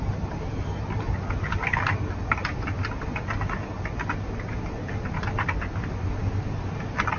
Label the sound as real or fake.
real